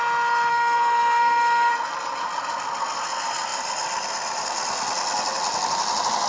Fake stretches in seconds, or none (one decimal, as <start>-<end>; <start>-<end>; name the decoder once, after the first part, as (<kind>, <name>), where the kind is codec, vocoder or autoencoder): 0.5-1.7 (codec, SNAC)